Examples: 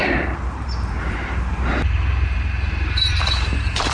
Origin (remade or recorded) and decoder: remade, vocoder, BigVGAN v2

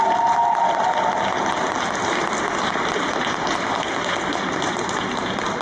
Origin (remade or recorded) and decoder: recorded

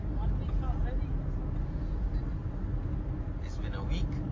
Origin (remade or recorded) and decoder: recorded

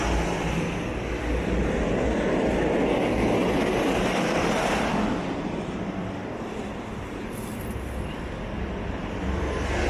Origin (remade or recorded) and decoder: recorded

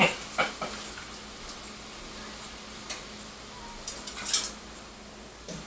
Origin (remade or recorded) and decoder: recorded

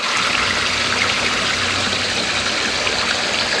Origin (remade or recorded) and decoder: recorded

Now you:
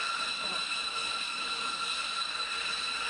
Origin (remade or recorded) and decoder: remade, vocoder, BigVGAN v2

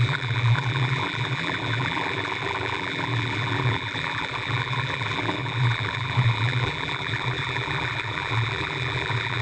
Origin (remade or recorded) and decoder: remade, vocoder, BigVGAN v2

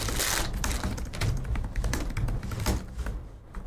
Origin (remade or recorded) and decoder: recorded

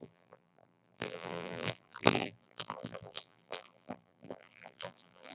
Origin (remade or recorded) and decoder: remade, vocoder, BigVGAN v2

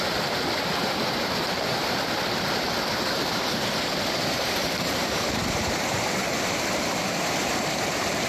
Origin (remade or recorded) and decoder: remade, vocoder, BigVGAN v2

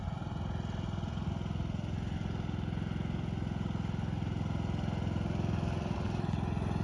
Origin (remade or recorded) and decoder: recorded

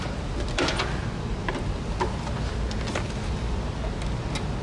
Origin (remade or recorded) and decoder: recorded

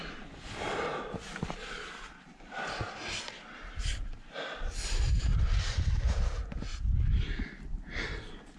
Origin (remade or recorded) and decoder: recorded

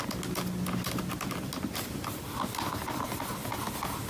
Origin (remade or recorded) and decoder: recorded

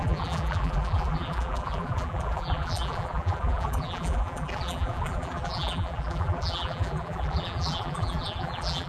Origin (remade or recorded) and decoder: remade, vocoder, BigVGAN v2